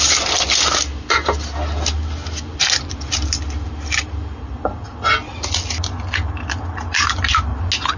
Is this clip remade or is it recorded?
recorded